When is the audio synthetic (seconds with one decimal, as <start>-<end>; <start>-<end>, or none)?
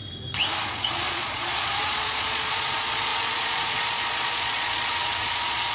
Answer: 0.7-5.7